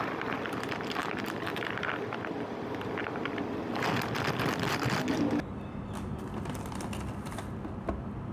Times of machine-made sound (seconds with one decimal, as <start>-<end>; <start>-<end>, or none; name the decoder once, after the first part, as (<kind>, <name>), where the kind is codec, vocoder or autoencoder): 1.0-1.7 (vocoder, BigVGAN v2)